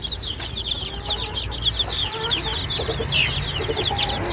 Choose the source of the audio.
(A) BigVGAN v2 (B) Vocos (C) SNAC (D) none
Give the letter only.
D